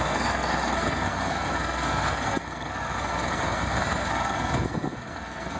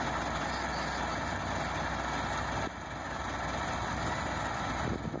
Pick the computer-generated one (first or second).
first